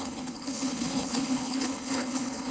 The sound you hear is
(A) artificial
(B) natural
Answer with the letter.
A